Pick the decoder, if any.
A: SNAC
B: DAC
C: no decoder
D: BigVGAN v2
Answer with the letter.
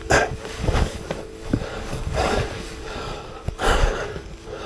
B